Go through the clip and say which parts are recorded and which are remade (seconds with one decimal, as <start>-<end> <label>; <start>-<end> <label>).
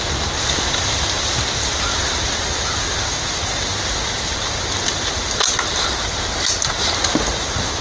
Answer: 0.0-7.8 recorded